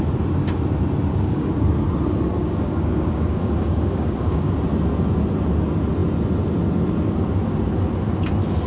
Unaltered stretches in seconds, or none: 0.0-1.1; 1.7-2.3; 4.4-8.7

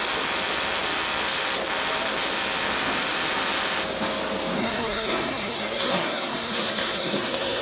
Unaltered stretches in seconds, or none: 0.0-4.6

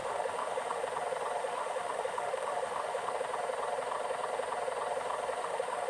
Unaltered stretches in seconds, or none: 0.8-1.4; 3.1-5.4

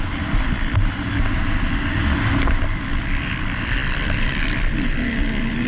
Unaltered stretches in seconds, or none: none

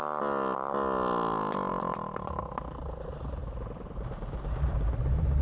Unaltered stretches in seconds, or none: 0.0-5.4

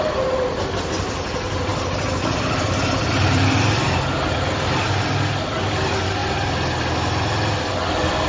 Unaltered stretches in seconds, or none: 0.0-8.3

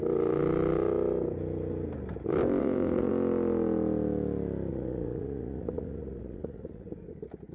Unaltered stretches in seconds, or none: 0.0-2.6; 3.1-4.7; 6.9-7.5